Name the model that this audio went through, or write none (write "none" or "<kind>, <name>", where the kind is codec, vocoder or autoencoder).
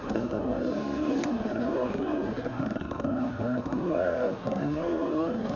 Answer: codec, SNAC